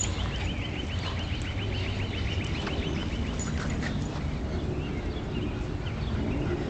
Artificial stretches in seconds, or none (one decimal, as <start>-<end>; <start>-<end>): none